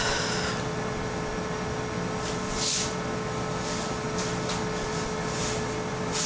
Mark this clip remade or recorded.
remade